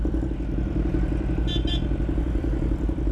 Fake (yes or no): no